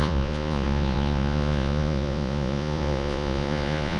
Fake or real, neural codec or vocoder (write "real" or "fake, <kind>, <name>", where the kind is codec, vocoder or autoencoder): fake, vocoder, Vocos